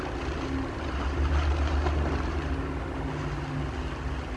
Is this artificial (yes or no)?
no